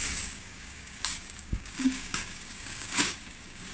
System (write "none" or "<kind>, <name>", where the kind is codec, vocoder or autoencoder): codec, DAC